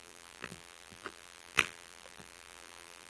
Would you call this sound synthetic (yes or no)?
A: yes